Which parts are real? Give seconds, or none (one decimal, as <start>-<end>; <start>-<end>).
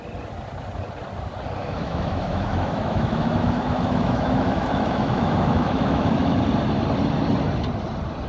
0.0-1.6; 6.4-8.3